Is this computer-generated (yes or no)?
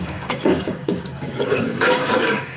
yes